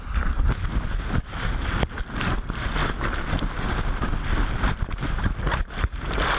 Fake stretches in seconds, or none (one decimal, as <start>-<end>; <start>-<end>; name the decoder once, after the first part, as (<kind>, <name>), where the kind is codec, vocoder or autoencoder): none